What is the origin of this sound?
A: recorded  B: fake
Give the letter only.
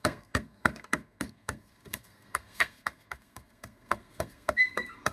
B